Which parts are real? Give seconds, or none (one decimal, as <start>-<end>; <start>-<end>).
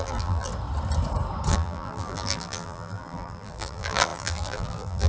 0.5-1.5